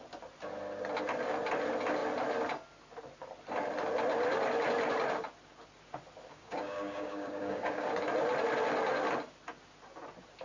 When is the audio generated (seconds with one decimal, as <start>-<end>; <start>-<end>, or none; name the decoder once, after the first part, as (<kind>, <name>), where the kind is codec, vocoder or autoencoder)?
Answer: 6.3-7.9 (codec, DAC)